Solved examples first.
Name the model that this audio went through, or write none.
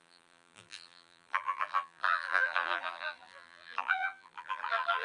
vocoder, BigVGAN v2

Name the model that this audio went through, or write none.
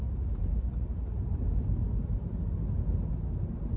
none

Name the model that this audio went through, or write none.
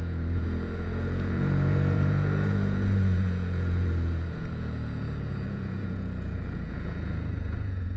vocoder, Vocos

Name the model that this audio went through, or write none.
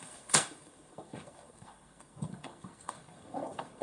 codec, SNAC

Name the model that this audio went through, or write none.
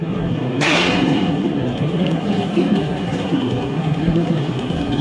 codec, SNAC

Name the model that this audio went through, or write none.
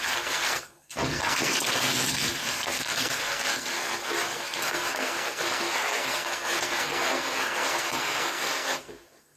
codec, SNAC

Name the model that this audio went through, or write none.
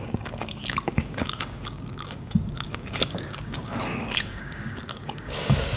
codec, DAC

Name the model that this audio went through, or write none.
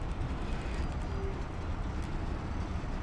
none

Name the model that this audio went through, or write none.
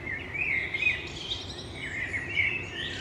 none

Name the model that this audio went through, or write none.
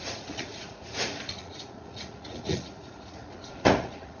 vocoder, Vocos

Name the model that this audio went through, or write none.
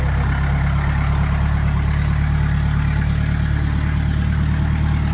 none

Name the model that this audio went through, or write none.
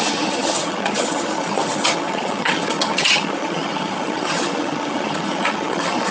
vocoder, HiFi-GAN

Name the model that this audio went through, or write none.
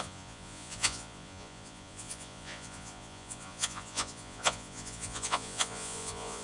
vocoder, Vocos